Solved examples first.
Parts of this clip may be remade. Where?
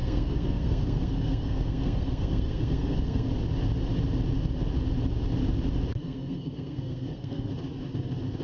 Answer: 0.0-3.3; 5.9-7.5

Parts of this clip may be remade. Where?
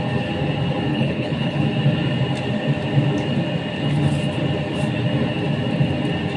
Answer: 0.9-1.6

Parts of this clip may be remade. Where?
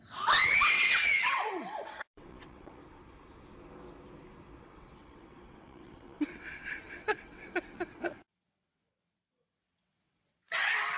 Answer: 0.0-2.8; 4.6-11.0